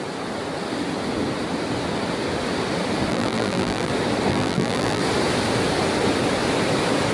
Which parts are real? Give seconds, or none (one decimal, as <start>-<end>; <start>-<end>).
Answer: 0.0-3.1; 3.9-4.3; 5.0-7.1